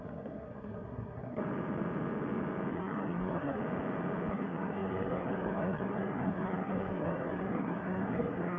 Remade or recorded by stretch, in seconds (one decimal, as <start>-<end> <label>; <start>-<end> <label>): 0.0-1.4 remade; 1.4-2.7 recorded; 2.7-3.6 remade; 3.6-4.3 recorded; 4.3-8.6 remade